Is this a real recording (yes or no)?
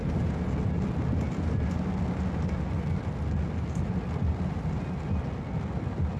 yes